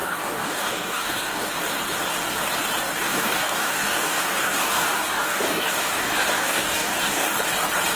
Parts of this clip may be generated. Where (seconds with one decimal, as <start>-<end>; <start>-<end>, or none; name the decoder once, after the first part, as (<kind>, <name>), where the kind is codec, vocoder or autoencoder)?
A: 0.0-1.5 (codec, DAC); 3.1-7.4